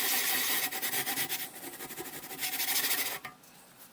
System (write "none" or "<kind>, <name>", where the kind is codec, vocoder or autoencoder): none